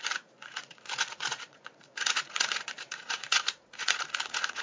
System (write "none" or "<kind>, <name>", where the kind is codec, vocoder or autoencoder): vocoder, Vocos